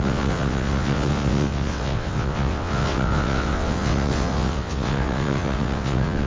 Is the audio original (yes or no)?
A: no